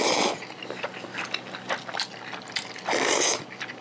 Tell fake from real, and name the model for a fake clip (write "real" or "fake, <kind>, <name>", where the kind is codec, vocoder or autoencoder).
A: real